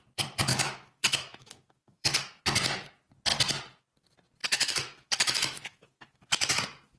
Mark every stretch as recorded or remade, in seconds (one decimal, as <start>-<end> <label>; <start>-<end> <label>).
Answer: 0.0-0.5 recorded; 0.5-2.4 remade; 2.4-4.4 recorded; 4.4-6.6 remade; 6.6-7.0 recorded